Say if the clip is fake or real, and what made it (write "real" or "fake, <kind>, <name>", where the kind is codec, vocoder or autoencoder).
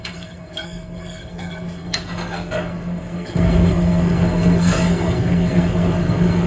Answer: fake, codec, SNAC